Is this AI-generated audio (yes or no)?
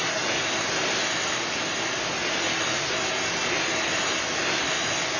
no